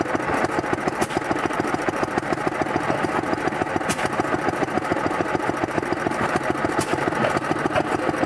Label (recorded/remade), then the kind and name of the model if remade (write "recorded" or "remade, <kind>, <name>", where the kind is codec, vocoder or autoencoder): recorded